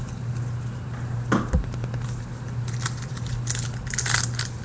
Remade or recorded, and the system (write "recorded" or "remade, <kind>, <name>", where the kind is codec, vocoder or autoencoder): recorded